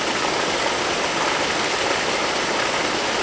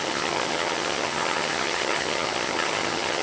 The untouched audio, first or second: first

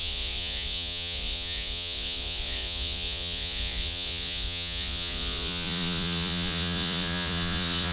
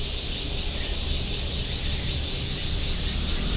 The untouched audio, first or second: second